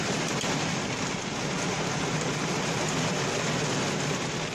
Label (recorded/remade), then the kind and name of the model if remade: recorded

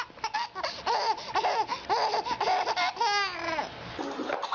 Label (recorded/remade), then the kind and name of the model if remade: recorded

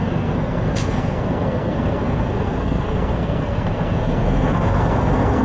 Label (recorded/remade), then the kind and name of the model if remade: remade, codec, SNAC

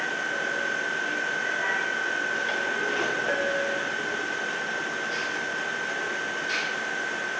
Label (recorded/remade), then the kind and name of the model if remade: recorded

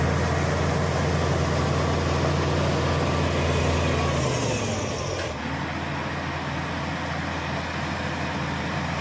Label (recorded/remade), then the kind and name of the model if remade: recorded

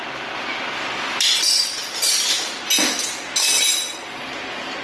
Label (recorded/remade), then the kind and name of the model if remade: recorded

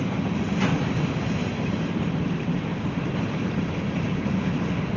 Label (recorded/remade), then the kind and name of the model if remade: recorded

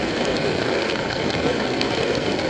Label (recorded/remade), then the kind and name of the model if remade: remade, codec, SNAC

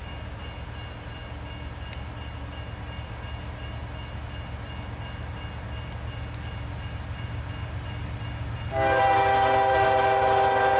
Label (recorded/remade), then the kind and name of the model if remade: recorded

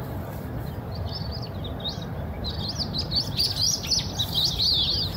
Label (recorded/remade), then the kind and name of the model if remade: recorded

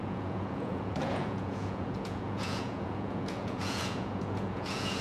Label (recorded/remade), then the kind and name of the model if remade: remade, vocoder, Vocos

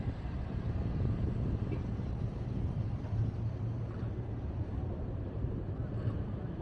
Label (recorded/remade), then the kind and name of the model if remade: remade, vocoder, BigVGAN v2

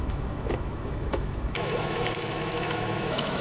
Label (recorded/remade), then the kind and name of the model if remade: remade, autoencoder, DAC-VAE